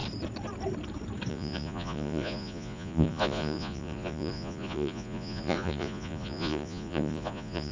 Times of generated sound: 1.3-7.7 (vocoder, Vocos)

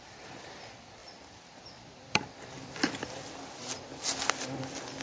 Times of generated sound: 1.0-4.0 (vocoder, BigVGAN v2)